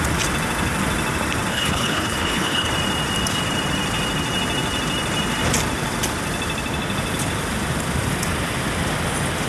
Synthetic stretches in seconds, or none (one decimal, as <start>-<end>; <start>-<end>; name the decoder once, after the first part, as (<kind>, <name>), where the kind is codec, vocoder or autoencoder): 1.5-2.7 (codec, HILCodec)